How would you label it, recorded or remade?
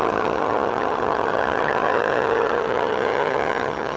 remade